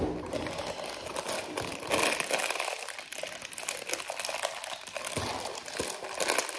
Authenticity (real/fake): real